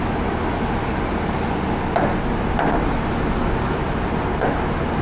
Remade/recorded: recorded